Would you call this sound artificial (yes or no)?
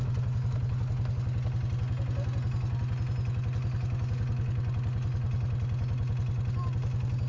no